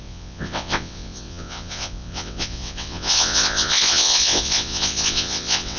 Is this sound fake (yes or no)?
yes